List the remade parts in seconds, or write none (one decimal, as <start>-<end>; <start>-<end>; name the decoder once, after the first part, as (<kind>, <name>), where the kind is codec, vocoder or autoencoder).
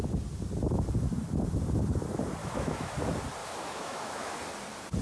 2.4-2.9 (autoencoder, DAC-VAE); 3.4-4.4